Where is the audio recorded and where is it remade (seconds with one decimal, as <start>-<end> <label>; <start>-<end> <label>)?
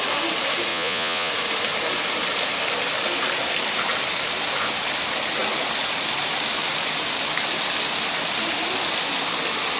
0.0-0.7 recorded; 0.7-1.3 remade; 1.3-9.8 recorded